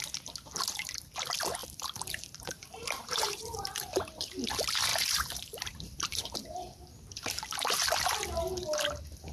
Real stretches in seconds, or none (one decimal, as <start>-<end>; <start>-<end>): 0.0-1.6; 4.4-4.9; 7.5-9.3